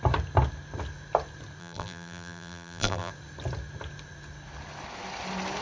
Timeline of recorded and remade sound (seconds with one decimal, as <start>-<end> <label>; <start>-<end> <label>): 0.0-1.6 recorded; 1.6-3.1 remade; 3.1-5.6 recorded